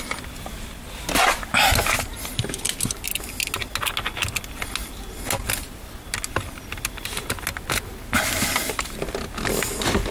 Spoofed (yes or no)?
no